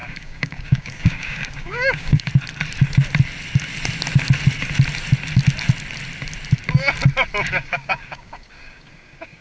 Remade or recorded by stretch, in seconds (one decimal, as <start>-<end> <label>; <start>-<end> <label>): 0.0-2.3 remade; 2.3-7.5 recorded; 7.5-9.4 remade